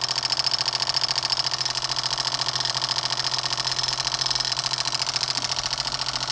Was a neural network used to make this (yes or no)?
no